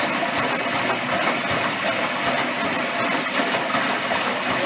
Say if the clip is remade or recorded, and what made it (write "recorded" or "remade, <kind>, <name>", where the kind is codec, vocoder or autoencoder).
recorded